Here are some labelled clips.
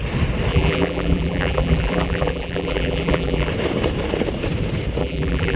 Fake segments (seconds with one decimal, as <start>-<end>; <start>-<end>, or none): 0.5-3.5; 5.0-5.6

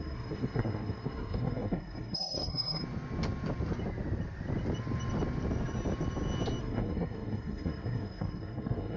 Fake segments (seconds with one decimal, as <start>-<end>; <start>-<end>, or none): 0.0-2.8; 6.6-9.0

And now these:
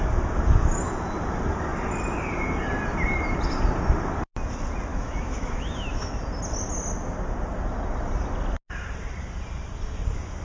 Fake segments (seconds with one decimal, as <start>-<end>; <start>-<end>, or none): 4.9-6.2